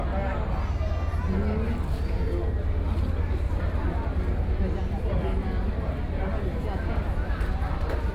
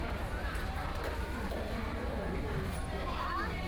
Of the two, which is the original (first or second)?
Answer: first